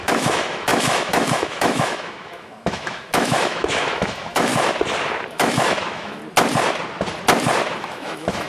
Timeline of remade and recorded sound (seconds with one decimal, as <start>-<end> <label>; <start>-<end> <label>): 0.0-4.5 remade; 4.5-5.3 recorded; 5.3-6.2 remade; 6.2-7.8 recorded; 7.8-8.5 remade